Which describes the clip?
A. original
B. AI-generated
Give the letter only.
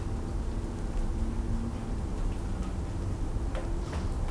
A